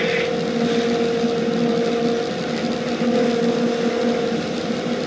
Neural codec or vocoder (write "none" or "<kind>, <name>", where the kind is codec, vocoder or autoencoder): none